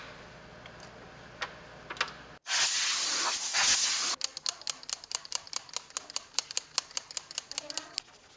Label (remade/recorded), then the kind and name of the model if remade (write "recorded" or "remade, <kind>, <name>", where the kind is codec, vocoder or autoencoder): recorded